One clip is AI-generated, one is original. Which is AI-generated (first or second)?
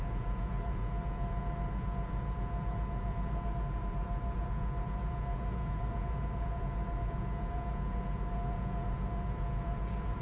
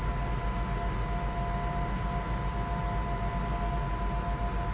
first